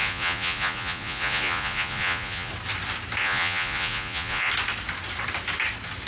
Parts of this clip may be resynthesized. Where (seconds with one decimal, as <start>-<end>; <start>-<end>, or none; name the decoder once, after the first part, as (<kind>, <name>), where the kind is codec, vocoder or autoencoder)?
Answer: 0.0-2.5 (vocoder, Vocos); 3.2-4.5